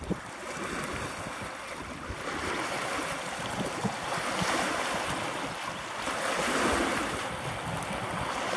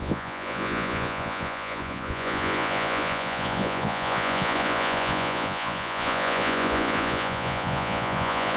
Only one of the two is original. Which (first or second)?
first